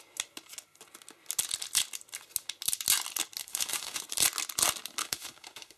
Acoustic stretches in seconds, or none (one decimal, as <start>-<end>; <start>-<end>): 0.0-3.4; 4.0-5.0